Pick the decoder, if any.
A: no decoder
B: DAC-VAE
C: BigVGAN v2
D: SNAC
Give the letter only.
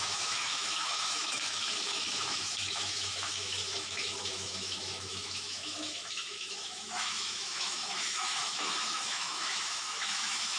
B